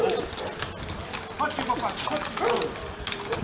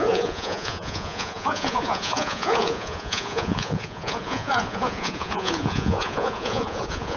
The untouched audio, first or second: first